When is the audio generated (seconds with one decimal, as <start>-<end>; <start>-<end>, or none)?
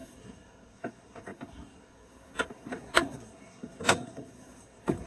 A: 0.0-5.1